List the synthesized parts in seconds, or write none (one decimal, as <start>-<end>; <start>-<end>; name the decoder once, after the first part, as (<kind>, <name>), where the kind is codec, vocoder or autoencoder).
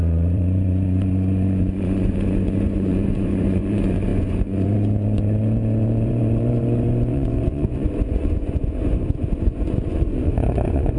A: 0.0-11.0 (vocoder, Vocos)